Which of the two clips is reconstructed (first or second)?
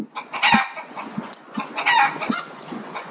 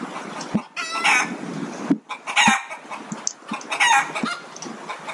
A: first